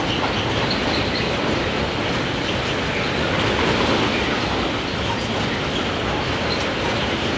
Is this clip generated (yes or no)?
no